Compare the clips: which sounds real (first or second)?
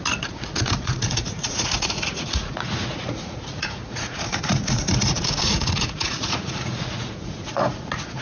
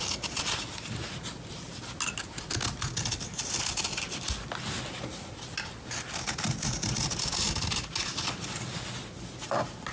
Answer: second